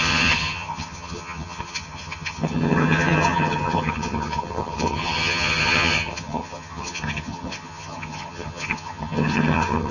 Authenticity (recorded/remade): remade